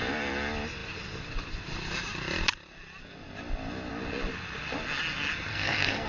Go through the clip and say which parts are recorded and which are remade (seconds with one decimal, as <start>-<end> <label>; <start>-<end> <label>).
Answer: 0.0-5.5 recorded; 5.5-6.1 remade